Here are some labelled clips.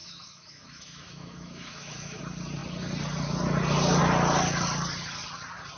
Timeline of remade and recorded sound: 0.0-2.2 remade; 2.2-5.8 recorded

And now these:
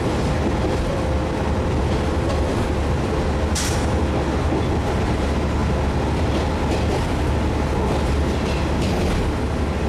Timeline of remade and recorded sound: 0.0-9.9 recorded